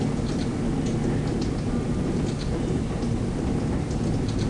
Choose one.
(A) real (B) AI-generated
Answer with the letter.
A